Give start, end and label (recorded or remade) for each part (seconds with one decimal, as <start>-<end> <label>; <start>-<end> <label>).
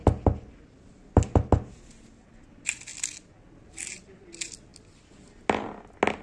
0.0-6.2 recorded